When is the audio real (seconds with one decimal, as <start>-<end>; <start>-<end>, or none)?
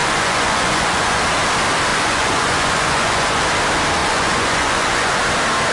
1.2-1.9; 3.4-4.0; 5.2-5.7